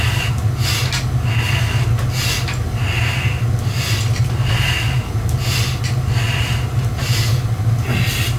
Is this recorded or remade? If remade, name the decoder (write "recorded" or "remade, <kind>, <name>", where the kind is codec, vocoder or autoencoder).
recorded